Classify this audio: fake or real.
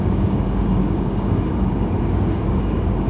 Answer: fake